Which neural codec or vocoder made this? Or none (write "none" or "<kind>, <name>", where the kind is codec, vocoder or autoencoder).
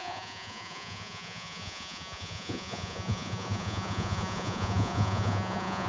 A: vocoder, Vocos